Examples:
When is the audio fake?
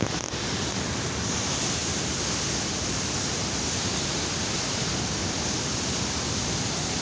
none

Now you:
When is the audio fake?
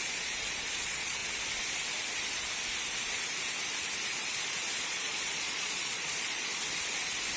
0.0-1.2; 4.8-6.5